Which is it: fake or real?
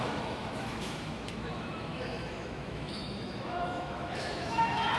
fake